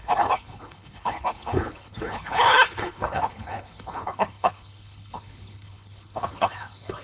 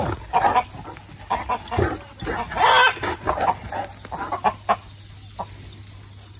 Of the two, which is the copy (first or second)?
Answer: first